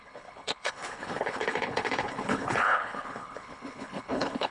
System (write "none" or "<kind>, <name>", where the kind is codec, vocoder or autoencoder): codec, HILCodec